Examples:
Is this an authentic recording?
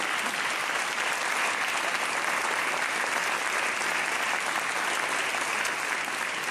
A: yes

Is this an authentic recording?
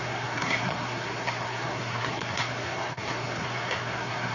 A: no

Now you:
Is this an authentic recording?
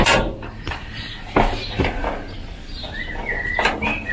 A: yes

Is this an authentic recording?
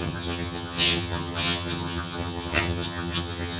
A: no